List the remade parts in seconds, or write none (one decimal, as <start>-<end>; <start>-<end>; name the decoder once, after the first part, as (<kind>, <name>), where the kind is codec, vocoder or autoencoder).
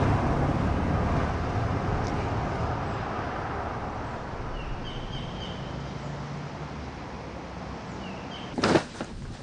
none